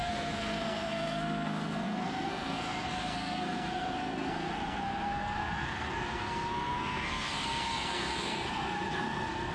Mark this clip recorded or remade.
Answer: remade